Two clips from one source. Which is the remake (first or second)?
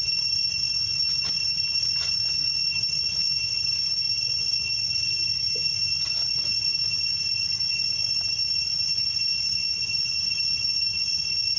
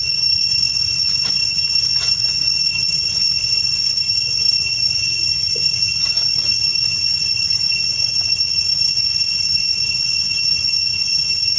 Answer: second